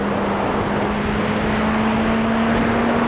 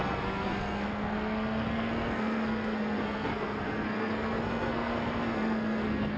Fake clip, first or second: second